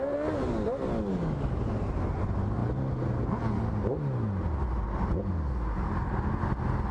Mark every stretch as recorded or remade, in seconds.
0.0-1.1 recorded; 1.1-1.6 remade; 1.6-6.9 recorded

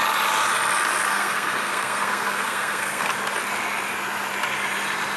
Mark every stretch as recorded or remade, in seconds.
0.0-1.1 recorded; 1.1-3.1 remade; 3.1-5.2 recorded

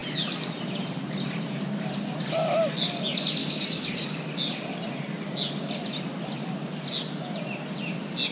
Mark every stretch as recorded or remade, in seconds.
0.0-3.4 recorded; 3.4-4.2 remade; 4.2-8.3 recorded

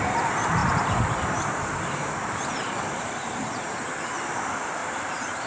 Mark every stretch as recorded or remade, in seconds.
0.0-0.6 recorded; 0.6-3.9 remade; 3.9-4.8 recorded; 4.8-5.5 remade

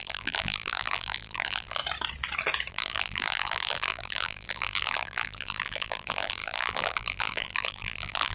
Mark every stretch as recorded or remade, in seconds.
0.0-1.8 remade; 1.8-2.7 recorded; 2.7-8.3 remade